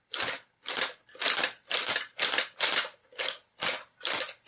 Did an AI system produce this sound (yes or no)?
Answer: no